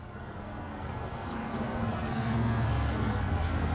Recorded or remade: remade